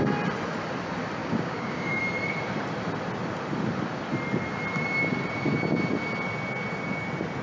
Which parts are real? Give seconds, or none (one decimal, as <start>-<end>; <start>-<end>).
0.0-1.2; 2.0-7.4